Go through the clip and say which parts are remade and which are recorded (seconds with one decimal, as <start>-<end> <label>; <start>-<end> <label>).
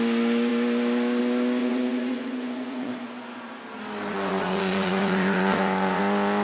0.0-1.6 recorded; 1.6-2.9 remade; 2.9-4.1 recorded; 4.1-6.0 remade; 6.0-6.4 recorded